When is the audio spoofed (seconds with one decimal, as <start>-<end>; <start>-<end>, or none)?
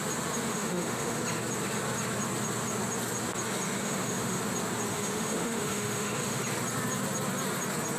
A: 0.5-1.2; 3.8-4.4; 4.9-6.4